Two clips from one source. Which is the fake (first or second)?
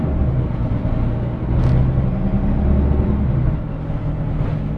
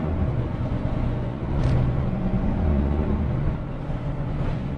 second